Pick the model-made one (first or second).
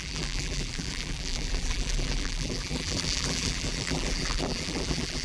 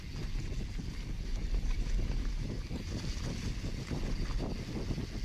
first